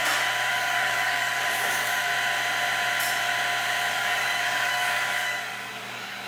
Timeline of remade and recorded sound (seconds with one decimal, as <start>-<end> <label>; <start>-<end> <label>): 0.0-0.5 recorded; 0.5-2.1 remade; 2.1-3.9 recorded; 3.9-6.3 remade